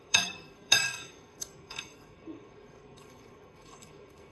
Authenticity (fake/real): fake